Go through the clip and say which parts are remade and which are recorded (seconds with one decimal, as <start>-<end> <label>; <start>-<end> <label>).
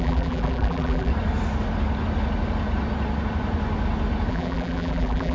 0.0-1.1 remade; 1.1-4.3 recorded; 4.3-5.3 remade